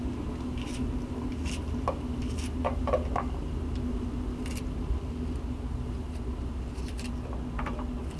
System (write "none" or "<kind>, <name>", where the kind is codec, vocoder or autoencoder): none